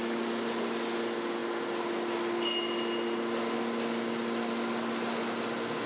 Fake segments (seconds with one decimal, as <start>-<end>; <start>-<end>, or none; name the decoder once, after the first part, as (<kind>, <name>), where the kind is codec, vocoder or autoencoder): none